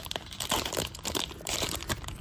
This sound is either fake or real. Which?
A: real